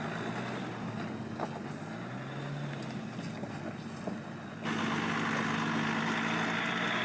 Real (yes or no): yes